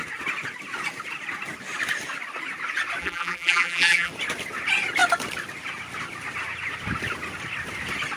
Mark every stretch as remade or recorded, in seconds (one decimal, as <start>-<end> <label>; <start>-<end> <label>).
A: 0.0-3.0 recorded; 3.0-4.1 remade; 4.1-8.2 recorded